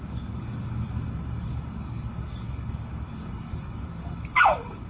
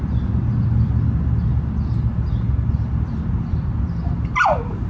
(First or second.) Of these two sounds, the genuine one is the second